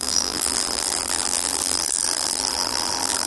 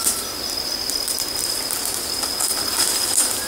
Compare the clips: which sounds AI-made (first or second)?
first